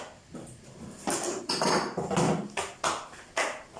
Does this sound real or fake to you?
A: real